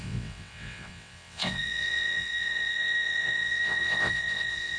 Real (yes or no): no